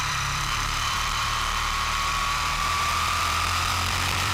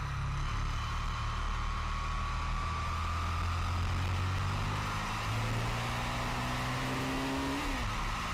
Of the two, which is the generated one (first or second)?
first